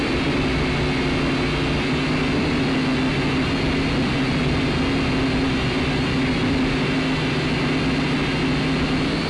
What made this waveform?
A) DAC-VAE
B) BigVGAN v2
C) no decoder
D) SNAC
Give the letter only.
C